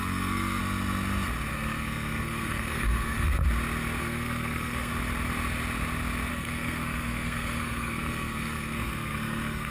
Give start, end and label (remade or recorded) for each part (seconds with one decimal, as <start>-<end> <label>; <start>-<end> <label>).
0.0-0.6 remade; 0.6-1.5 recorded; 1.5-3.4 remade; 3.4-4.0 recorded; 4.0-4.9 remade; 4.9-6.3 recorded; 6.3-9.7 remade